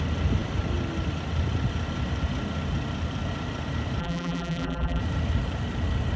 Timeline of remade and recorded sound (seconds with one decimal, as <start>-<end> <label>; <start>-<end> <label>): 0.0-4.0 recorded; 4.0-5.0 remade; 5.0-6.2 recorded